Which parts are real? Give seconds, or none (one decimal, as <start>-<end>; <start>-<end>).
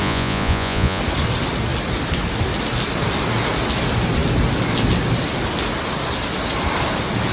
1.0-7.3